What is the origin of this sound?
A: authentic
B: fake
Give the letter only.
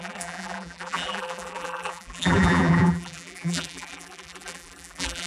B